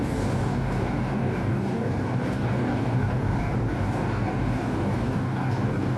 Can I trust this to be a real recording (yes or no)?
no